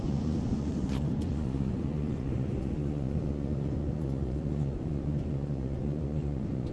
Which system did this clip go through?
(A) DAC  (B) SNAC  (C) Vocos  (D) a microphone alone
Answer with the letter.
C